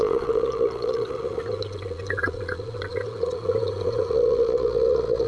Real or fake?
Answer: fake